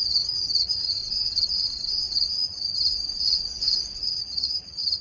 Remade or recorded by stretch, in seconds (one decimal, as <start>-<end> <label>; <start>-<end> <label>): 0.0-1.0 remade; 1.0-2.3 recorded; 2.3-2.9 remade; 2.9-4.1 recorded; 4.1-5.0 remade